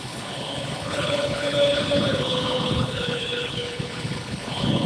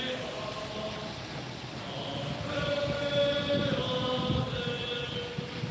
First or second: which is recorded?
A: second